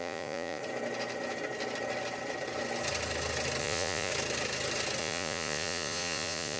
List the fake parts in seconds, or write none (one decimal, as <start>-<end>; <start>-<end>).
0.0-0.6; 3.6-4.1; 5.0-6.6